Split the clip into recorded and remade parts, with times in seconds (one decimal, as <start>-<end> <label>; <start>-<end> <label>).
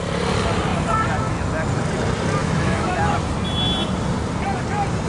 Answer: 0.0-2.4 recorded; 2.4-3.1 remade; 3.1-5.1 recorded